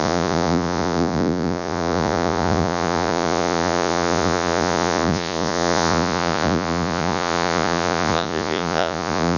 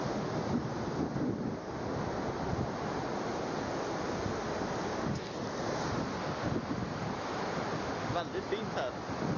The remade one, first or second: first